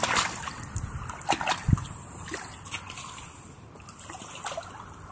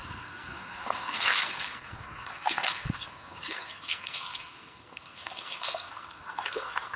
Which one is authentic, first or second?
first